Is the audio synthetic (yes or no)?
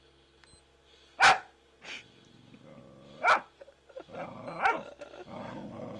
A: no